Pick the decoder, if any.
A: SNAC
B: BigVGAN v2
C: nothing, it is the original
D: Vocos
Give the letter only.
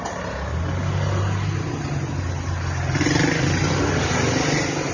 C